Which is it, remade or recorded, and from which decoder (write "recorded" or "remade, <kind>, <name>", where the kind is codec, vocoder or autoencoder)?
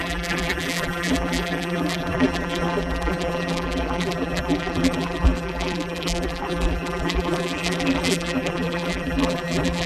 remade, vocoder, BigVGAN v2